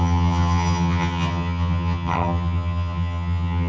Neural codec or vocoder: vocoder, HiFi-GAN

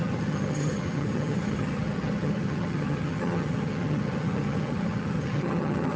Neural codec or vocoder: vocoder, HiFi-GAN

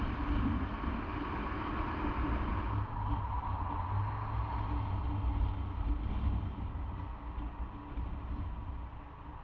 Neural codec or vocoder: none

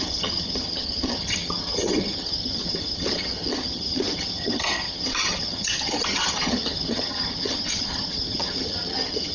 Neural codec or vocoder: vocoder, HiFi-GAN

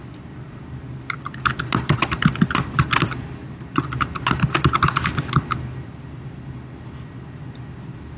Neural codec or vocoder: none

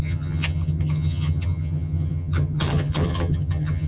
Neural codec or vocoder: vocoder, HiFi-GAN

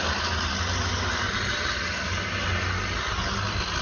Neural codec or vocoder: none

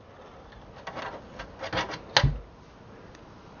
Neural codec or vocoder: none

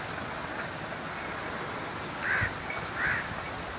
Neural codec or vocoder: none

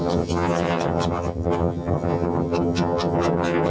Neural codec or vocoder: vocoder, HiFi-GAN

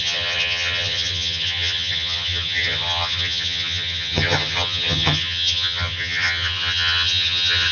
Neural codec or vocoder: vocoder, HiFi-GAN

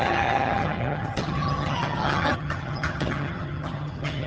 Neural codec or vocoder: vocoder, HiFi-GAN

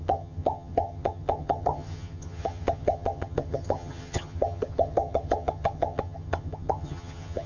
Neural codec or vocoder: vocoder, HiFi-GAN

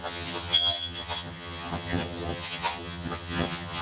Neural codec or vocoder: vocoder, HiFi-GAN